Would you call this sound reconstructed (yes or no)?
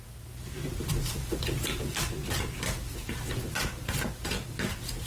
no